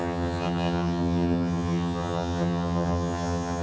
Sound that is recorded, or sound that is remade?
remade